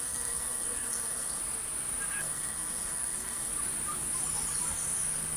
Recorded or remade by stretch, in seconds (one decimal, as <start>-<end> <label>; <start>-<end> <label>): 0.0-1.4 remade; 1.4-2.2 recorded; 2.2-3.5 remade; 3.5-5.4 recorded